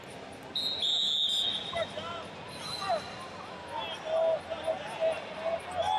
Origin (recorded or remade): recorded